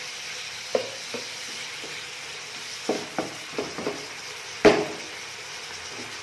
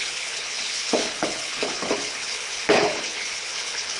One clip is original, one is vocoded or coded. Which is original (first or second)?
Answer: first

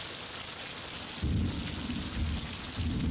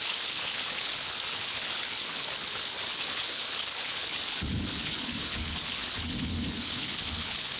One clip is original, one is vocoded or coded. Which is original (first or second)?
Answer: first